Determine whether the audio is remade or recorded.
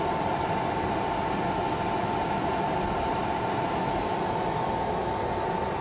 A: recorded